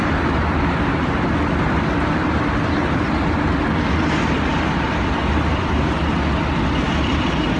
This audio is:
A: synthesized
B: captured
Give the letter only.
A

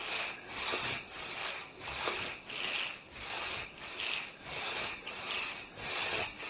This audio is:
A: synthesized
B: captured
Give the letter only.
B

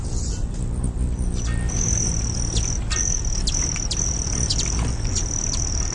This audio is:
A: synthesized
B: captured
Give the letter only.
B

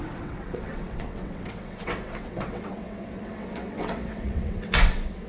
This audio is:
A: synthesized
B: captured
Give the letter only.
A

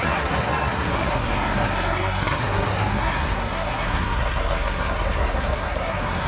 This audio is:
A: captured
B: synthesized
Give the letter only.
B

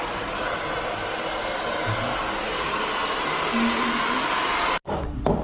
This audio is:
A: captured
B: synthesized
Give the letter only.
A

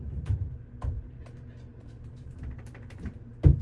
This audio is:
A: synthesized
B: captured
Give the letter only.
A